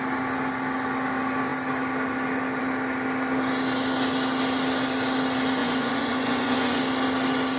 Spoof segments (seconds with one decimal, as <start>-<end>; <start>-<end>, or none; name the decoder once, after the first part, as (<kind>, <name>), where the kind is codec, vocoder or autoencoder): 5.6-6.8 (vocoder, Vocos)